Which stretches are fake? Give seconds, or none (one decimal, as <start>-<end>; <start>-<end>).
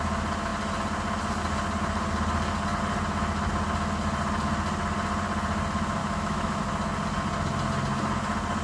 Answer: 6.0-6.6